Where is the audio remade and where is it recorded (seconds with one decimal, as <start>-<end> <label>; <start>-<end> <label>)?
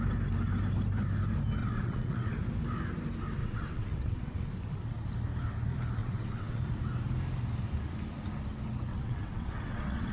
0.0-1.6 recorded; 1.6-2.3 remade; 2.3-3.4 recorded; 3.4-4.5 remade; 4.5-6.0 recorded; 6.0-6.6 remade; 6.6-8.9 recorded; 8.9-10.1 remade